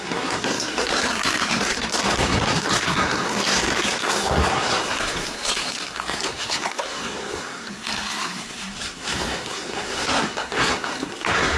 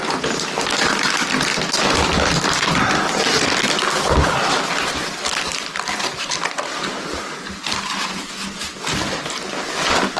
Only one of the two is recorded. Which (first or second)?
second